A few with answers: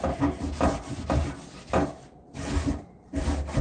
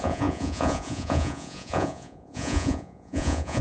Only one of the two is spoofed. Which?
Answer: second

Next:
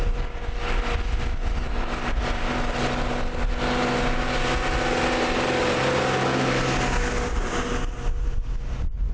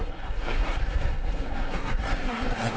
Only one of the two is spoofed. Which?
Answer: second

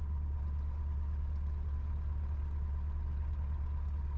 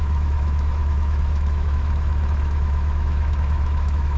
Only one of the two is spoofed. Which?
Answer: second